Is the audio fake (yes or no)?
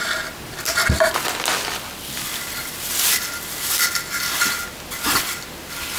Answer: no